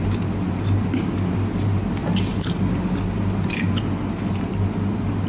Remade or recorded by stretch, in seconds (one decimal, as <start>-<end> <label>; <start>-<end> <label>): 0.0-5.3 recorded